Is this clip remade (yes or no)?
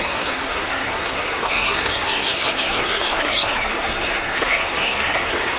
yes